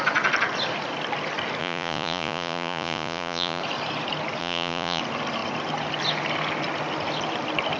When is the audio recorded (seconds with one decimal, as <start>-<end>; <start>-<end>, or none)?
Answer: 0.0-1.6; 3.6-4.4; 5.0-7.8